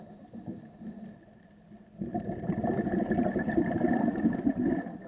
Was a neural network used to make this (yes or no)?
no